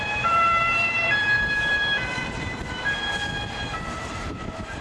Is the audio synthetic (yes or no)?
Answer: yes